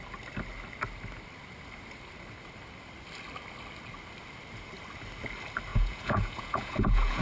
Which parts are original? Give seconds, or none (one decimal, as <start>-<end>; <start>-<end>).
0.0-5.7